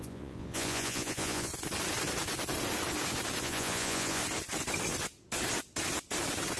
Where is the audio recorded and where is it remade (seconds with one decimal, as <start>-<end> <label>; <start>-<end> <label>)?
0.0-1.5 remade; 1.5-3.4 recorded; 3.4-4.2 remade; 4.2-6.6 recorded